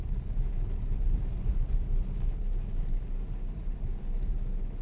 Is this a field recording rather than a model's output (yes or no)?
yes